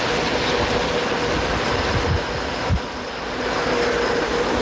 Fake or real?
real